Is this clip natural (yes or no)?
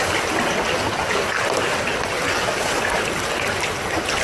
yes